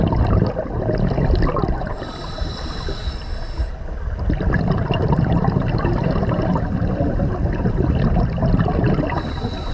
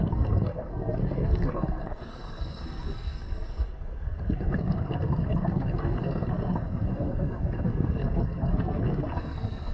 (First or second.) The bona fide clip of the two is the first